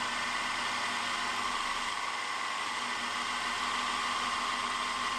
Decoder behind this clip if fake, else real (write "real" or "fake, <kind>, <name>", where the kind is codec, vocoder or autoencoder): real